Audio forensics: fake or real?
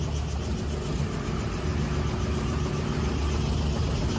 real